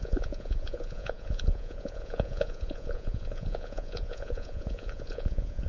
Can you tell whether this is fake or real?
fake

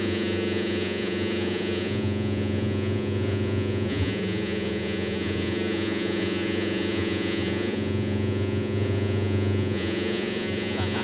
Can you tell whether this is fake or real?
fake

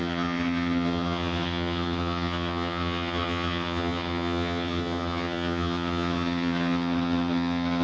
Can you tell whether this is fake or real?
fake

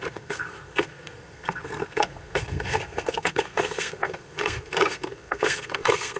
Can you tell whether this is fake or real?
fake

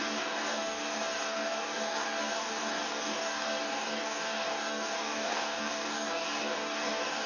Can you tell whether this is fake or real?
fake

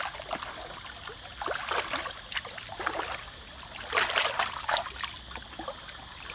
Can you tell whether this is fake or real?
real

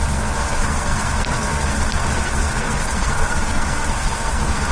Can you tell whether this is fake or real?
fake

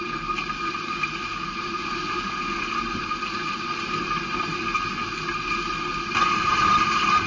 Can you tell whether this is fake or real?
real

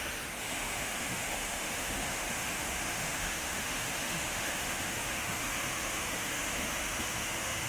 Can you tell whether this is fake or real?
fake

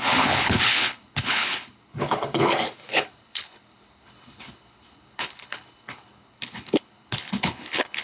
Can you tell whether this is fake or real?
fake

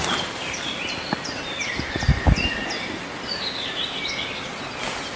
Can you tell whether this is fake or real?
real